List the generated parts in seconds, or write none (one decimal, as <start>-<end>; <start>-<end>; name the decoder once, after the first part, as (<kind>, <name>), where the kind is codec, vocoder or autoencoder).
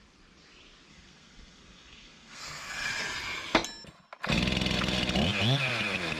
0.9-2.9 (codec, SNAC)